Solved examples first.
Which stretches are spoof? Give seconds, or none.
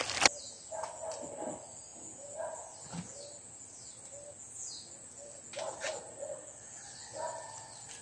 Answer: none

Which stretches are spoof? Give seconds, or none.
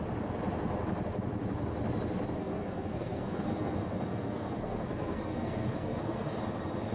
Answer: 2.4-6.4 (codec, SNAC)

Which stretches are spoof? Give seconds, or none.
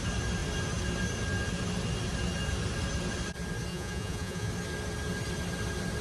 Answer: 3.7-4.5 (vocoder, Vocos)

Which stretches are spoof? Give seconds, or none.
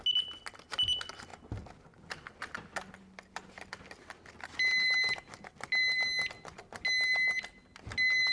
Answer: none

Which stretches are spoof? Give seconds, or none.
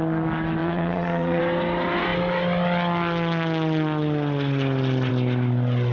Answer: 0.6-1.4 (vocoder, Vocos)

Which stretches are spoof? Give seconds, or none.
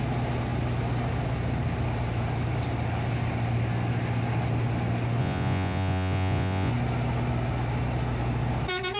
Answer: 5.2-6.7 (vocoder, Vocos)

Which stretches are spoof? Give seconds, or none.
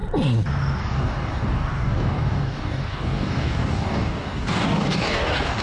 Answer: 0.8-5.6 (codec, DAC)